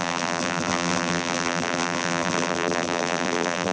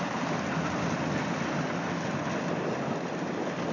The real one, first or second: second